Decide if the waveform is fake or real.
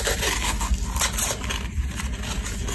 real